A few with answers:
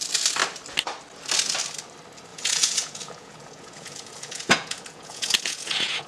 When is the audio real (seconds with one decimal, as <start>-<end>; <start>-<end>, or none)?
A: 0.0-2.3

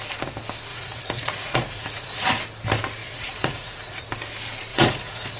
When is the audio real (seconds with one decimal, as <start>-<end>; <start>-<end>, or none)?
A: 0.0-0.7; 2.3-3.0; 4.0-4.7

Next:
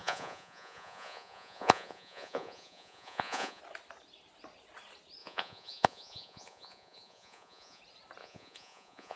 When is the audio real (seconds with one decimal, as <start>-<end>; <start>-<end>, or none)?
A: 3.6-5.2; 7.8-8.2

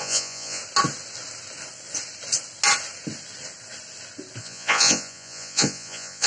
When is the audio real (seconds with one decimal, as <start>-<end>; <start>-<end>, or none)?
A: 0.6-4.4

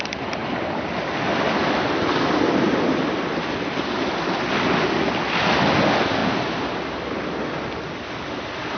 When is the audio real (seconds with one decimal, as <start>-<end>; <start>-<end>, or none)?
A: 0.0-8.8

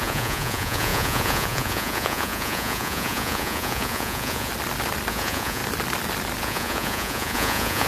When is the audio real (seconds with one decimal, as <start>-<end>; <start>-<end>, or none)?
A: 4.5-5.1; 5.6-6.4

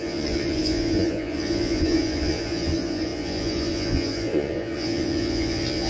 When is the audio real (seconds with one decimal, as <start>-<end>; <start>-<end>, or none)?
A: none